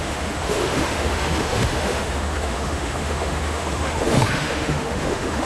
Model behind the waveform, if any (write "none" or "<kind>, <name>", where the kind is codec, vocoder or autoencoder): autoencoder, DAC-VAE